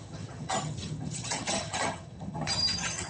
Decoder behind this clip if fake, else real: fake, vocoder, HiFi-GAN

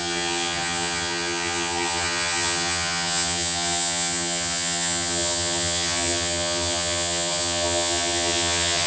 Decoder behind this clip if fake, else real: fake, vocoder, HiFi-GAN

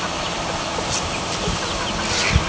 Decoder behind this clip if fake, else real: real